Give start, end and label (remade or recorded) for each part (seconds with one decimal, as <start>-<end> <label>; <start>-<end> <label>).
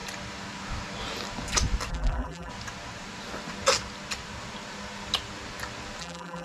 0.0-1.9 recorded; 1.9-2.5 remade; 2.5-6.0 recorded; 6.0-6.4 remade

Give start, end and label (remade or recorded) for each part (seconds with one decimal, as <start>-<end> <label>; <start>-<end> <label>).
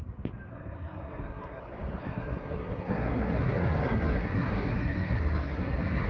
0.0-0.5 recorded; 0.5-1.6 remade; 1.6-2.0 recorded; 2.0-6.1 remade